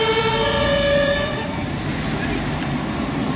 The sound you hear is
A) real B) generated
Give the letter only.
B